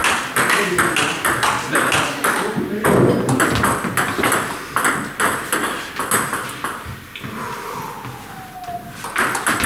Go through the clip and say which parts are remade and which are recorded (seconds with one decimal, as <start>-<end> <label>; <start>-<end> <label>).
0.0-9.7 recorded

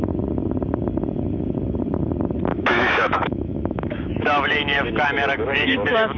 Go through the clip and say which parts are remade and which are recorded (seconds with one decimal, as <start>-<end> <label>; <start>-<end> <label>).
0.0-2.5 recorded; 2.5-6.2 remade

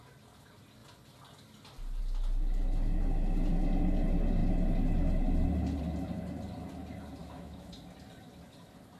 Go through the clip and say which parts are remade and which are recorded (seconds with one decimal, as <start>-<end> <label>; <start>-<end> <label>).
0.0-7.2 recorded; 7.2-7.7 remade; 7.7-9.0 recorded

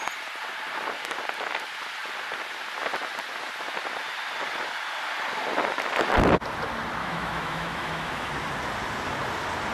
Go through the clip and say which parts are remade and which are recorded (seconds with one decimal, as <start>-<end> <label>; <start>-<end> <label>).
0.0-7.0 recorded; 7.0-8.3 remade; 8.3-9.7 recorded

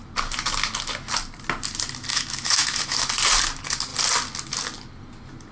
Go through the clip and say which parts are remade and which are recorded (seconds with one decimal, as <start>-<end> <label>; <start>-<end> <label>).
0.0-2.1 recorded; 2.1-3.1 remade; 3.1-5.5 recorded

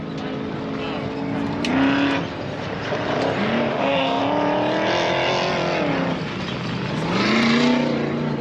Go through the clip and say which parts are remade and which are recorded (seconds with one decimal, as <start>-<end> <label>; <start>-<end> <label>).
0.0-3.7 recorded; 3.7-4.2 remade; 4.2-8.4 recorded